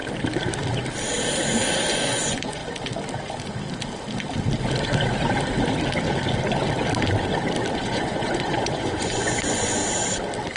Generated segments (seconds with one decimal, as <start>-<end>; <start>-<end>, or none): 1.9-2.6; 7.7-9.8